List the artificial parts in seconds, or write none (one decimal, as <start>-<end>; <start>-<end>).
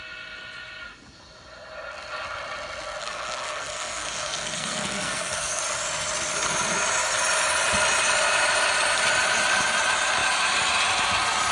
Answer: 3.0-5.6